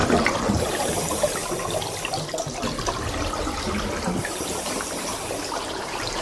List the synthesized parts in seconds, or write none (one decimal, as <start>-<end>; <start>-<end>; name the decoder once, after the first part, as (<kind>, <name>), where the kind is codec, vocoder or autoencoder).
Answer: 0.0-1.4 (vocoder, BigVGAN v2); 4.5-5.1; 5.7-6.2